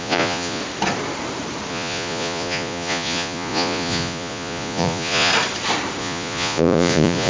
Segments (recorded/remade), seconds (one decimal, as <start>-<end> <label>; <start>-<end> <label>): 0.0-0.6 remade; 0.6-1.7 recorded; 1.7-5.3 remade; 5.3-6.0 recorded; 6.0-7.3 remade